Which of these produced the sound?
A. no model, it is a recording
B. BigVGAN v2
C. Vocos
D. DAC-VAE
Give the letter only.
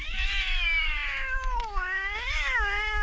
D